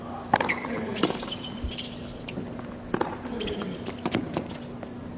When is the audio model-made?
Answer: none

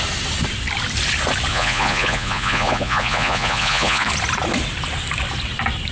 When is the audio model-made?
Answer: 1.5-4.1

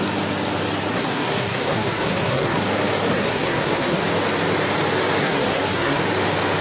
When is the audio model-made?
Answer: 0.9-2.6; 3.1-4.0; 5.2-6.0